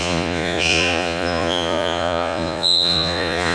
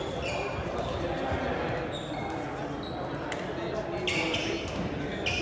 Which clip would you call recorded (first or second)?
second